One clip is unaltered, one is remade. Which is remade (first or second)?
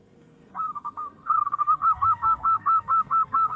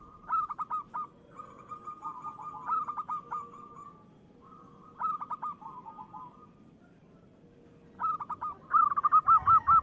first